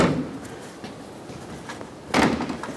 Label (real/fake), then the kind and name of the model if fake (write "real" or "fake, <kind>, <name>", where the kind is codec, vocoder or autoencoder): real